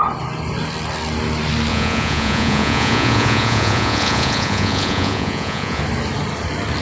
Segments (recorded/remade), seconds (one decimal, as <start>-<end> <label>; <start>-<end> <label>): 0.0-1.7 recorded; 1.7-5.8 remade; 5.8-6.8 recorded